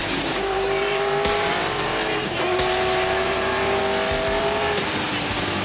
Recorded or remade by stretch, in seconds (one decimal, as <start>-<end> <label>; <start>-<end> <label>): 0.0-3.8 remade; 3.8-4.4 recorded; 4.4-5.6 remade